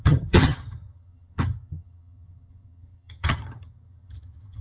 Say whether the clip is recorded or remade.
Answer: remade